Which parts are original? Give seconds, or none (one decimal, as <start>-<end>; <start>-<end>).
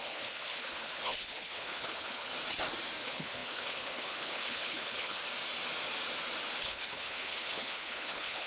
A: 2.3-3.0; 5.2-6.6